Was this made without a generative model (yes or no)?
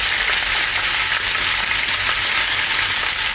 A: yes